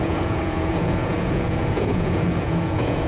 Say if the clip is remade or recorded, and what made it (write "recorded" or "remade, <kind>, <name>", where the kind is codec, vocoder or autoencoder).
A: remade, vocoder, Vocos